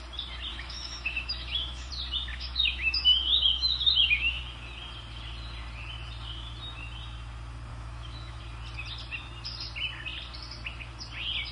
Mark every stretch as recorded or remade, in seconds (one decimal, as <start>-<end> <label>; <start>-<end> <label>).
0.0-0.5 recorded; 0.5-1.9 remade; 1.9-2.3 recorded; 2.3-4.4 remade; 4.4-7.7 recorded; 7.7-8.4 remade; 8.4-11.5 recorded